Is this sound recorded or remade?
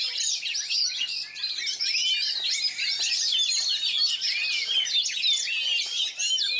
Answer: recorded